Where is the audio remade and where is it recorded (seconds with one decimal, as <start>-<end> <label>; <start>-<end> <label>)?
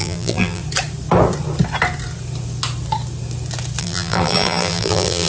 0.0-0.6 remade; 0.6-3.8 recorded; 3.8-5.3 remade